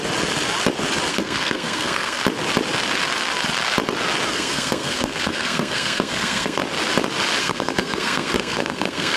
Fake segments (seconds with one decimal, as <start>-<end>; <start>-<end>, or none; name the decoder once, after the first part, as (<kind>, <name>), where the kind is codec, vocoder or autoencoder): 1.1-2.2 (codec, SNAC); 4.3-6.6; 7.4-9.2